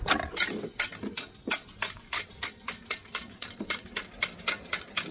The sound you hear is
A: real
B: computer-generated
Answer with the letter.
A